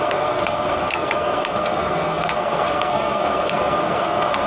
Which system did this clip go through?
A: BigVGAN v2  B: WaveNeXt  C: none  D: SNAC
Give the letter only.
D